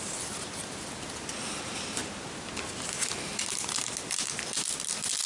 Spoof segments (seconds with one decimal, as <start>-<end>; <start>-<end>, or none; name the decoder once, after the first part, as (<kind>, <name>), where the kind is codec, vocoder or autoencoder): 0.0-2.0 (vocoder, BigVGAN v2); 3.9-5.3

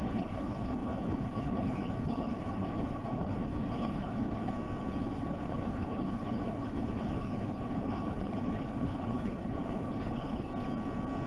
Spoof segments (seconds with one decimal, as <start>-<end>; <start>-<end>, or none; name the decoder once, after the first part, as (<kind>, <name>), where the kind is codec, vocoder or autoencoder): 0.0-4.5 (codec, HILCodec); 5.0-10.5

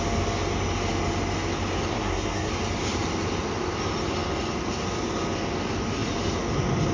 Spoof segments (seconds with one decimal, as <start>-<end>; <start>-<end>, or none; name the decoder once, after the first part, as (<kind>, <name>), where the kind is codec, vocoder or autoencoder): 1.9-2.5 (codec, SNAC)